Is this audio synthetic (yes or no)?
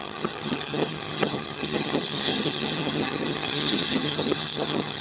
yes